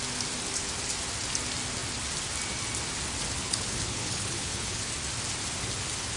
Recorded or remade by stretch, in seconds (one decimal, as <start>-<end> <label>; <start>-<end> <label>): 0.0-3.4 recorded; 3.4-4.9 remade; 4.9-6.2 recorded